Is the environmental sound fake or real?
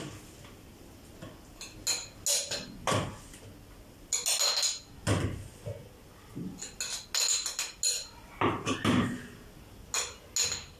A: real